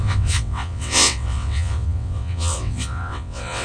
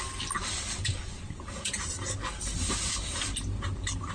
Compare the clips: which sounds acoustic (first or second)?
second